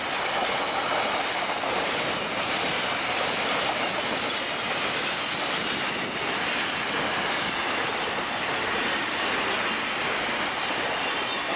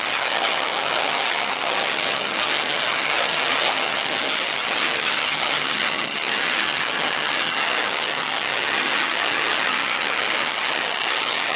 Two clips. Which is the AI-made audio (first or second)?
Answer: second